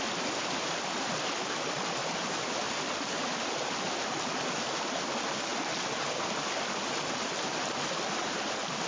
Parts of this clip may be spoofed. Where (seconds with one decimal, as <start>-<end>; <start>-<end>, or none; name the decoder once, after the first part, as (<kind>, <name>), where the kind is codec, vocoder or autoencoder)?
none